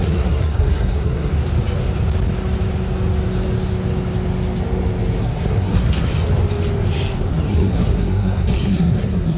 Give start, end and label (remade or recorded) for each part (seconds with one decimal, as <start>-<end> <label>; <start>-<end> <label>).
0.0-1.3 remade; 1.3-5.2 recorded; 5.2-6.1 remade; 6.1-7.3 recorded; 7.3-9.4 remade